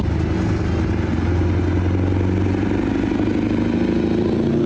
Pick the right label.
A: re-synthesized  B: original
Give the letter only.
B